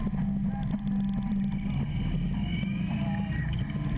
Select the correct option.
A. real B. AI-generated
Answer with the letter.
A